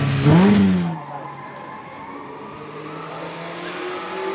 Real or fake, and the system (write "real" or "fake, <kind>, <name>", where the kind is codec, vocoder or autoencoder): real